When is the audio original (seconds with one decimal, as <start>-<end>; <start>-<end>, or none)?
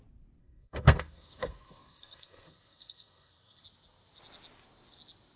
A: 0.0-0.4; 3.6-5.4